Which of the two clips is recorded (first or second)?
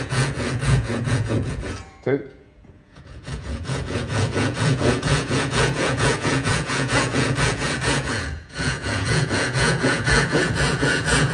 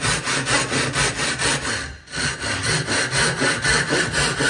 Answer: second